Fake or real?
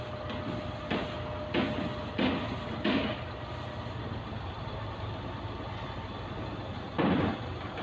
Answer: real